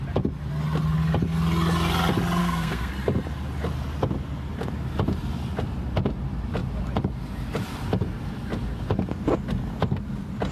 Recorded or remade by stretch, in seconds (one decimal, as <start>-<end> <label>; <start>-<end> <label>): 0.0-2.4 recorded; 2.4-2.9 remade; 2.9-10.5 recorded